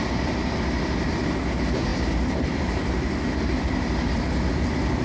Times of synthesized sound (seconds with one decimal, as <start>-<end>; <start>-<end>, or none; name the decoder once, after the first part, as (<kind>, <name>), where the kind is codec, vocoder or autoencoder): none